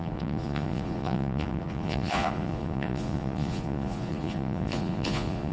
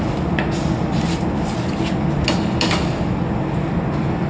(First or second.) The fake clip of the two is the first